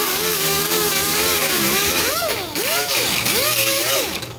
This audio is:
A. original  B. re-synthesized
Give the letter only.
B